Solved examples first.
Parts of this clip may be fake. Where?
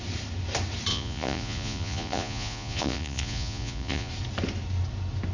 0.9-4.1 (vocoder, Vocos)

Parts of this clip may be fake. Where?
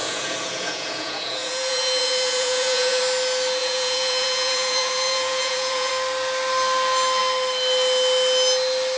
0.0-3.0 (vocoder, Vocos); 3.6-5.9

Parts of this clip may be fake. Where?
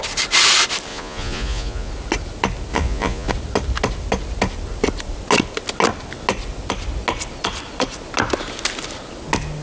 0.9-1.9 (vocoder, Vocos); 2.7-3.3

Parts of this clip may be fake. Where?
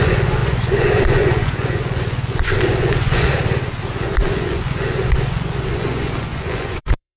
0.0-3.3 (vocoder, Vocos); 3.9-7.2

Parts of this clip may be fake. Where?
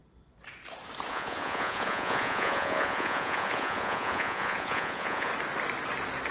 1.1-5.3 (vocoder, Vocos)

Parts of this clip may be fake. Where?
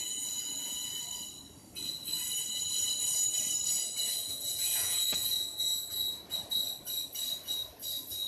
0.0-0.9 (vocoder, Vocos); 4.2-6.2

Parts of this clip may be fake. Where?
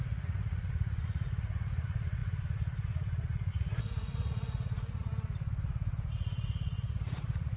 0.0-2.2 (vocoder, Vocos); 3.5-5.1; 6.1-7.6